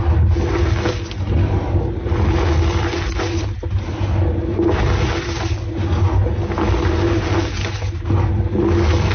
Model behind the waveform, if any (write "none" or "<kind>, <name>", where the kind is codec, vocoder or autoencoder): none